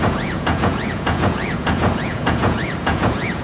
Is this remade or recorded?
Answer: remade